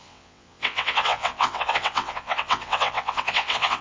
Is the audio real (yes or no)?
no